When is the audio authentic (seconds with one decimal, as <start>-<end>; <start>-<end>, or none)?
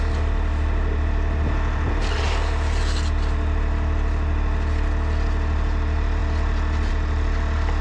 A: 0.0-7.8